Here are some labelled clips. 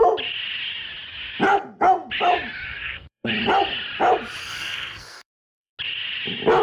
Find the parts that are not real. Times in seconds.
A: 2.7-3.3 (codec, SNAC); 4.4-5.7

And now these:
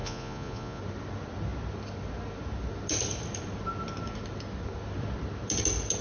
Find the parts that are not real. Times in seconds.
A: 0.0-0.8 (vocoder, Vocos)

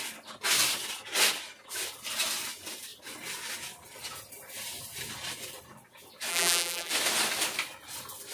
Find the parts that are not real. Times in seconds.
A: 6.3-6.9 (vocoder, BigVGAN v2)

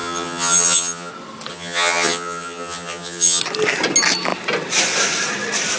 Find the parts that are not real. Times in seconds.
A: 0.0-1.1 (vocoder, HiFi-GAN); 1.5-3.4

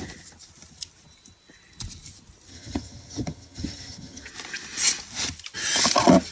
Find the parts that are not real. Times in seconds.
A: 2.5-4.3 (vocoder, HiFi-GAN)